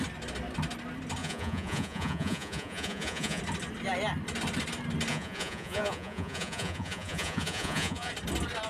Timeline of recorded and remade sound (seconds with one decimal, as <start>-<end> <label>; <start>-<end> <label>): 0.0-1.2 recorded; 1.2-3.4 remade; 3.4-5.1 recorded; 5.1-8.1 remade; 8.1-8.7 recorded